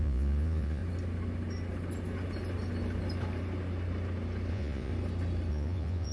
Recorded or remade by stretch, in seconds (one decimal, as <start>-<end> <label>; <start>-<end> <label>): 0.0-0.8 remade; 0.8-4.5 recorded; 4.5-4.9 remade; 4.9-5.5 recorded; 5.5-6.1 remade